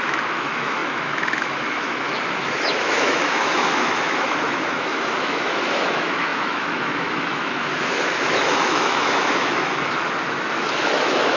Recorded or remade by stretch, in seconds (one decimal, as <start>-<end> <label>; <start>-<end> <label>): 0.0-11.4 remade